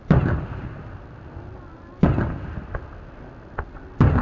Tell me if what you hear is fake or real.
real